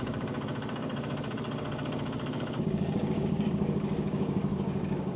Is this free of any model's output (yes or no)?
no